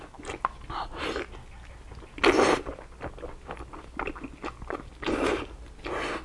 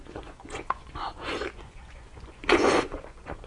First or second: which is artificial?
second